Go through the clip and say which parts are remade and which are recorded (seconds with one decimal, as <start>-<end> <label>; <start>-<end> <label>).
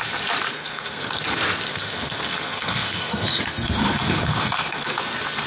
0.0-0.5 recorded; 0.5-1.2 remade; 1.2-1.7 recorded; 1.7-5.0 remade; 5.0-5.5 recorded